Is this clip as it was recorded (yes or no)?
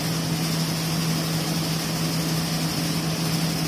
yes